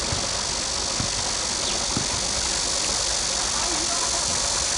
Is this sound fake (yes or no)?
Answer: no